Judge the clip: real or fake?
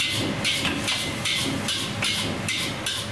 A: real